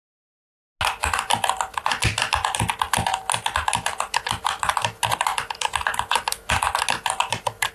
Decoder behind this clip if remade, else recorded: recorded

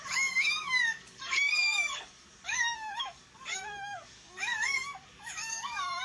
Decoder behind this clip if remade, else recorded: remade, codec, DAC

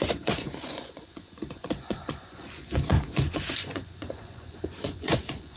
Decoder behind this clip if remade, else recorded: remade, vocoder, Vocos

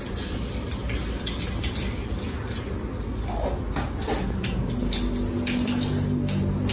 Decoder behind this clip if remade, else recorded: recorded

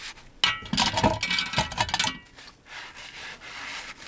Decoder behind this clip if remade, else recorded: recorded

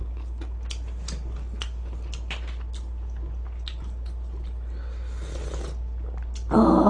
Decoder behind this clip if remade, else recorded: recorded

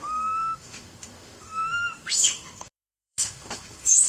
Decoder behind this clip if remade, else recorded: remade, autoencoder, DAC-VAE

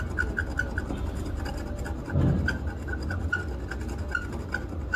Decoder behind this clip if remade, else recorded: recorded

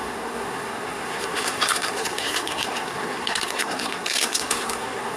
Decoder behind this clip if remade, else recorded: remade, codec, SNAC